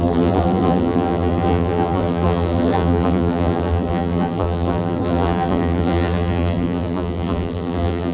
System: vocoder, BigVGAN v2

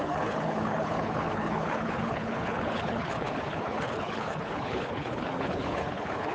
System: codec, HILCodec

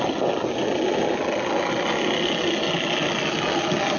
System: none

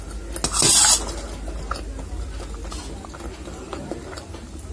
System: none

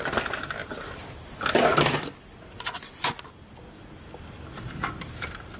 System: none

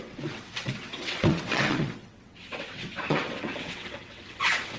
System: vocoder, WaveNeXt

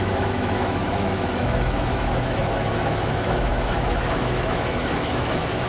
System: autoencoder, DAC-VAE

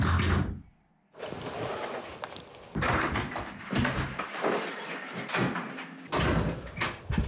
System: none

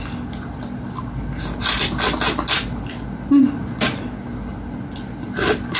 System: none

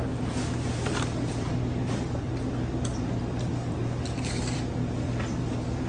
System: vocoder, BigVGAN v2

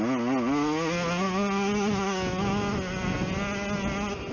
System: none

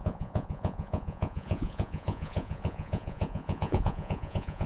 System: vocoder, Vocos